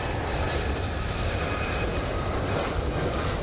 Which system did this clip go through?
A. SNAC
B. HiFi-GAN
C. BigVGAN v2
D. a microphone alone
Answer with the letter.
D